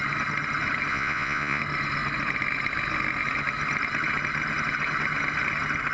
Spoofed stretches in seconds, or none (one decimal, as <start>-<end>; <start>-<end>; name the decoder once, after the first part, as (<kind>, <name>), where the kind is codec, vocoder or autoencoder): 0.9-1.6 (vocoder, Vocos)